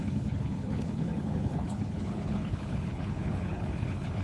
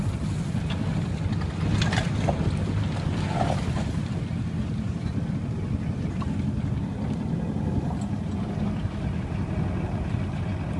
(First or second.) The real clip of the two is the second